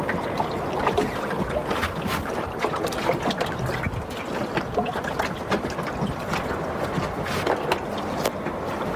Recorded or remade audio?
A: recorded